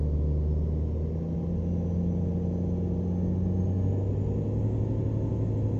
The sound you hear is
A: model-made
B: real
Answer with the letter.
B